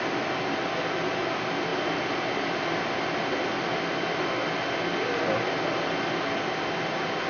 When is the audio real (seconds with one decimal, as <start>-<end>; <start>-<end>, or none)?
0.0-7.3